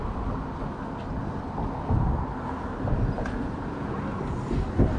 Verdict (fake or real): real